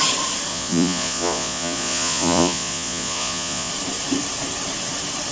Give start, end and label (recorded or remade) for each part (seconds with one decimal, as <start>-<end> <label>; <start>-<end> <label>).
0.0-0.5 recorded; 0.5-3.7 remade; 3.7-5.3 recorded